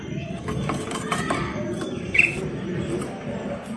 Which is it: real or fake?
fake